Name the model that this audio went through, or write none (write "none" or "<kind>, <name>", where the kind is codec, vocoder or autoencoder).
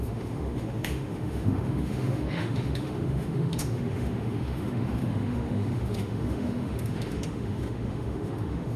autoencoder, DAC-VAE